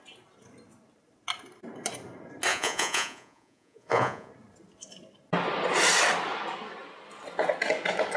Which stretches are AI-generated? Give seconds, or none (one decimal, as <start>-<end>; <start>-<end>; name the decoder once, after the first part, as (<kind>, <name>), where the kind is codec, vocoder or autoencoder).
2.5-4.3 (vocoder, Vocos)

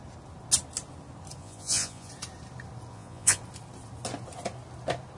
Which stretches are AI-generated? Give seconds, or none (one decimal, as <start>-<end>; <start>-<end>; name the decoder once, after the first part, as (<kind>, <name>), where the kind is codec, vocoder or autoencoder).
1.4-2.1 (vocoder, Vocos); 2.9-3.4

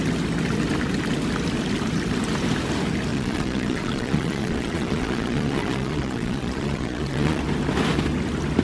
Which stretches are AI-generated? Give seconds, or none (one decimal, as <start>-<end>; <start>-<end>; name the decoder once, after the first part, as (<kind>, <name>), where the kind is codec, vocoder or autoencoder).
3.1-7.4 (vocoder, Vocos)